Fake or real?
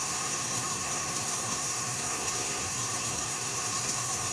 fake